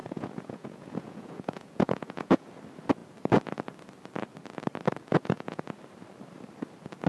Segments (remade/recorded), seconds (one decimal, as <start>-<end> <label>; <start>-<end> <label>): 0.0-2.5 remade; 2.5-5.1 recorded; 5.1-5.6 remade; 5.6-7.1 recorded